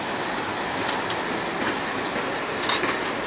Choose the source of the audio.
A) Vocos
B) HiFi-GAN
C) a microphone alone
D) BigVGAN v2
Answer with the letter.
C